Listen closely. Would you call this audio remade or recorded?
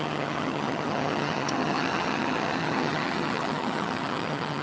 remade